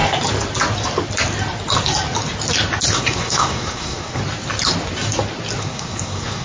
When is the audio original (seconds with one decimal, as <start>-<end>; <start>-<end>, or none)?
0.0-2.9; 4.2-5.6